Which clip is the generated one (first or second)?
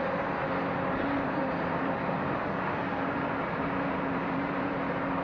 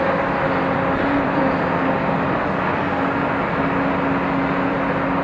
first